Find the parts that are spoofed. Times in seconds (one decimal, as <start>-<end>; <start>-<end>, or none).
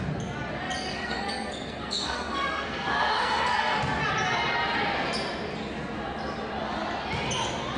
0.9-3.8